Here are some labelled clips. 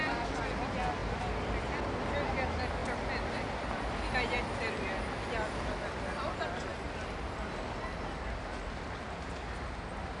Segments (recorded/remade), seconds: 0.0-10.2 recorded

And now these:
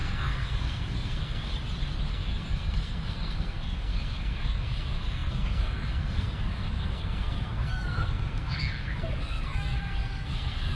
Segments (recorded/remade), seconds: 0.0-1.5 remade; 1.5-2.1 recorded; 2.1-10.8 remade

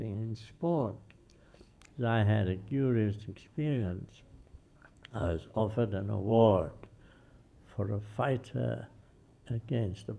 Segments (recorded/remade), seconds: 0.0-1.8 remade; 1.8-3.2 recorded; 3.2-5.6 remade; 5.6-6.3 recorded; 6.3-7.2 remade; 7.2-9.0 recorded; 9.0-9.6 remade; 9.6-10.2 recorded

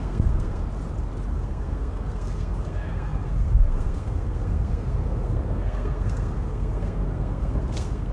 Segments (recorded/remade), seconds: 0.0-0.6 remade; 0.6-1.3 recorded; 1.3-8.1 remade

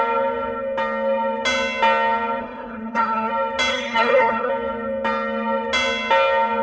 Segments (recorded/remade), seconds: 0.0-2.4 recorded; 2.4-3.3 remade; 3.3-3.7 recorded; 3.7-4.5 remade; 4.5-6.6 recorded

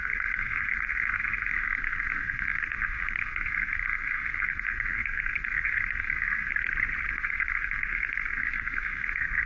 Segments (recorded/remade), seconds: 0.0-6.5 remade; 6.5-7.1 recorded; 7.1-9.5 remade

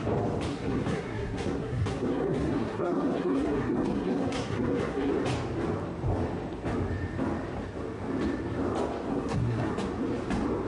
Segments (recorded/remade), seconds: 0.0-0.5 recorded; 0.5-5.1 remade; 5.1-9.1 recorded; 9.1-9.7 remade; 9.7-10.7 recorded